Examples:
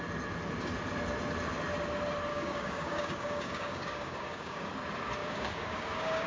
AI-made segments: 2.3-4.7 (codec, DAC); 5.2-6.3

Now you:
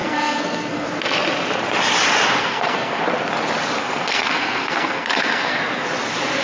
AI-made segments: 0.0-0.9 (codec, SNAC); 2.4-3.0; 3.8-5.6

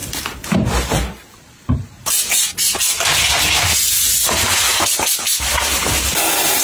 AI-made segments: 0.0-2.6 (vocoder, BigVGAN v2)